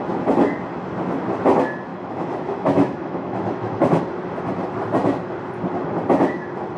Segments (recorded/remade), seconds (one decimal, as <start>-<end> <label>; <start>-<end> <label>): 0.0-1.9 recorded; 1.9-4.0 remade; 4.0-6.8 recorded